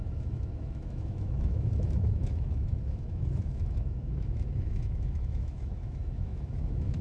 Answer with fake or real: fake